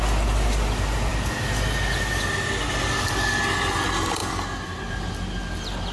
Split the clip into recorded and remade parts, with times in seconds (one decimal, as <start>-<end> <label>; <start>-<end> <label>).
0.0-5.9 recorded